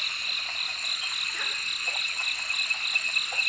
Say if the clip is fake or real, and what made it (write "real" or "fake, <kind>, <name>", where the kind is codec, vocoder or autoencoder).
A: real